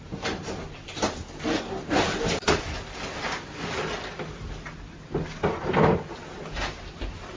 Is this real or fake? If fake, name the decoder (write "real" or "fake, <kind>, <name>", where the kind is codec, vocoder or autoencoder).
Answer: real